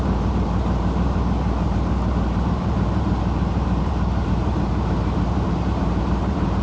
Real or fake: fake